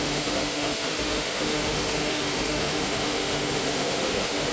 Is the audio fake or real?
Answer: fake